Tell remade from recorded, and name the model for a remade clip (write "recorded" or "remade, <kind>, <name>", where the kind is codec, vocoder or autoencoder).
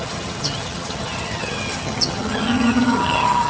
remade, vocoder, HiFi-GAN